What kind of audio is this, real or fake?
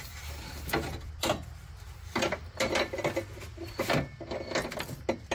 real